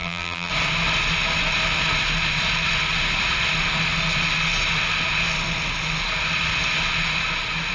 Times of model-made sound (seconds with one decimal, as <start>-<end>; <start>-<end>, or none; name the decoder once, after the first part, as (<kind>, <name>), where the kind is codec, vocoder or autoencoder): 0.0-0.5 (vocoder, BigVGAN v2)